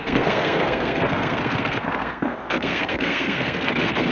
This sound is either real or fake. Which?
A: fake